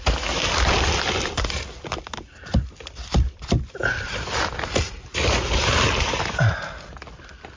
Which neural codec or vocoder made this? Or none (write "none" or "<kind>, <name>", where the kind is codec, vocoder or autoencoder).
none